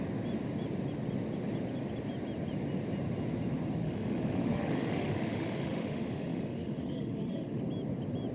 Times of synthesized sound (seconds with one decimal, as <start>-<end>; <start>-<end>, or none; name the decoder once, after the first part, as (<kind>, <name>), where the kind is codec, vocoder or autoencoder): 3.8-7.6 (autoencoder, DAC-VAE)